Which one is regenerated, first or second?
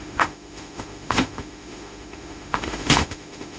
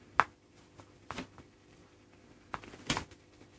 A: first